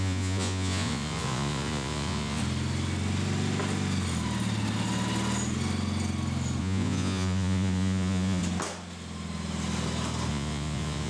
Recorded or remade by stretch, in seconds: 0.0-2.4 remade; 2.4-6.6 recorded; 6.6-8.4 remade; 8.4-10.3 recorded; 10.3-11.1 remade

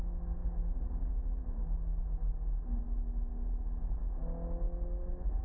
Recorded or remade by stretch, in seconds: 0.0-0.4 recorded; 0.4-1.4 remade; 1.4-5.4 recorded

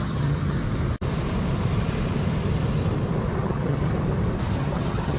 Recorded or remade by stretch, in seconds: 0.0-0.6 remade; 0.6-3.4 recorded; 3.4-3.8 remade; 3.8-4.6 recorded; 4.6-5.2 remade